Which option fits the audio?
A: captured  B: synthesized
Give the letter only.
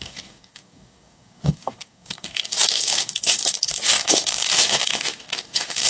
B